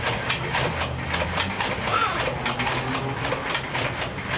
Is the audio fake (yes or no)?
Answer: no